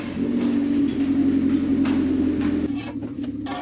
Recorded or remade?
recorded